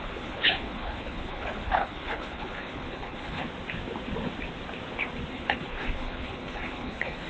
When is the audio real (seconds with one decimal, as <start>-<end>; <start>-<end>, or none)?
3.4-5.3